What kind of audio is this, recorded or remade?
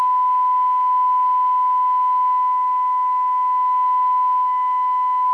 recorded